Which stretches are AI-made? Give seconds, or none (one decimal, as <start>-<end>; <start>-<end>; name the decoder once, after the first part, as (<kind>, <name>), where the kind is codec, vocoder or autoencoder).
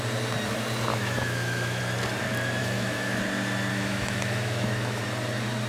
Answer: 0.9-1.8 (autoencoder, DAC-VAE); 2.6-3.2; 3.7-5.0